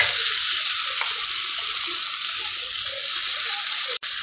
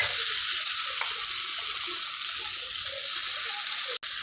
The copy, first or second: first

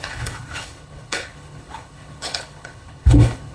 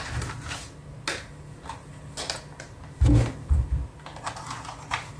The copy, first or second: first